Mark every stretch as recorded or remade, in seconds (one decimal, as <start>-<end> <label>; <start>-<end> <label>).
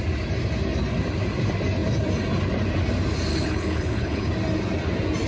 0.0-3.3 recorded; 3.3-4.3 remade; 4.3-5.3 recorded